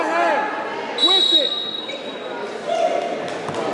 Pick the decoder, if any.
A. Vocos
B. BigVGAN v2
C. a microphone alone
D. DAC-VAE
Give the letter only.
C